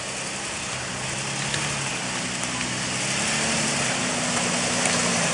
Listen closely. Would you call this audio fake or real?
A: real